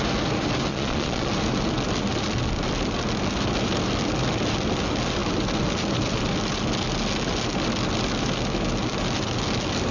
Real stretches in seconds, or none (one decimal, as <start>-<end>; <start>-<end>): 0.0-0.7; 1.3-9.9